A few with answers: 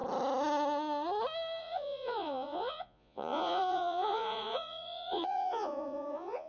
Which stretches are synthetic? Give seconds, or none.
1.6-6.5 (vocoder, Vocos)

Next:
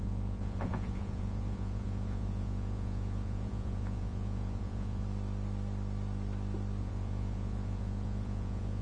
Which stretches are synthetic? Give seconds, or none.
0.0-5.0 (vocoder, Vocos); 6.8-8.8

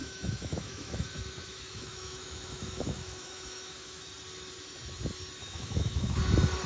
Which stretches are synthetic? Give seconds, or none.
0.0-4.0 (autoencoder, DAC-VAE); 5.4-6.2

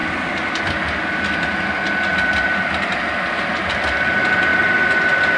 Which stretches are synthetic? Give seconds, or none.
none

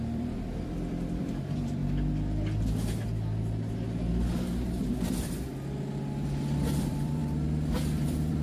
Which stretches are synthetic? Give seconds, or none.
0.0-1.8 (vocoder, BigVGAN v2); 6.8-7.2; 8.0-8.4

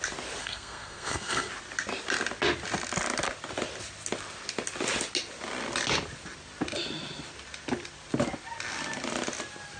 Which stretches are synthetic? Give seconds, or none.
0.4-1.5 (codec, SNAC)

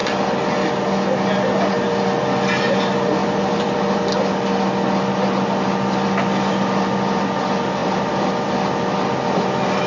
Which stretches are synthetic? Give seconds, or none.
3.2-4.0 (vocoder, BigVGAN v2); 7.8-8.3